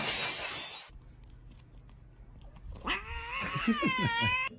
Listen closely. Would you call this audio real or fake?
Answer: real